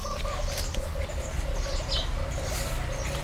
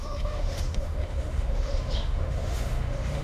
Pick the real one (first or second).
first